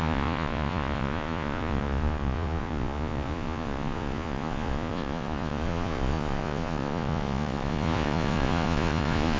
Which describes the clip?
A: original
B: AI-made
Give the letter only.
B